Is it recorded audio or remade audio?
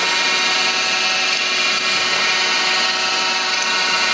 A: recorded